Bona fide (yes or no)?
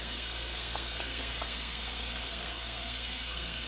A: no